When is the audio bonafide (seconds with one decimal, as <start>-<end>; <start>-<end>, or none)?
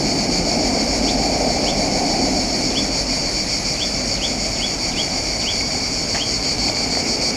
0.0-7.4